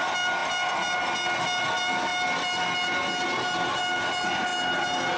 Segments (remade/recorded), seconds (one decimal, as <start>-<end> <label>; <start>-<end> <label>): 0.0-5.2 recorded